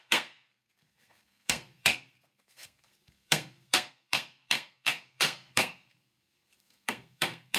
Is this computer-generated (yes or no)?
yes